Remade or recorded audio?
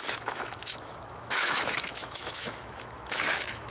remade